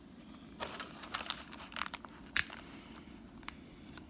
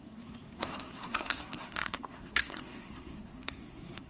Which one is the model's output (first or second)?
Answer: second